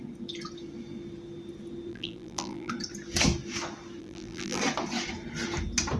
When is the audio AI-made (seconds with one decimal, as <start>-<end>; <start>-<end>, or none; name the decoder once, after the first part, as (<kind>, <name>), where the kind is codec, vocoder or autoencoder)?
1.9-2.7 (vocoder, BigVGAN v2); 4.0-4.6